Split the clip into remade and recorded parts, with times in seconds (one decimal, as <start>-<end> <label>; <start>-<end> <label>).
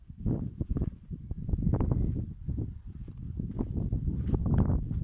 0.0-1.1 remade; 1.1-5.0 recorded